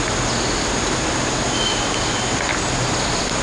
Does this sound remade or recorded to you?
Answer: recorded